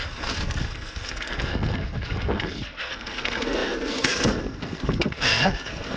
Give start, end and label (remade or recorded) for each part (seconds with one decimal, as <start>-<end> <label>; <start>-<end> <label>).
0.0-6.0 remade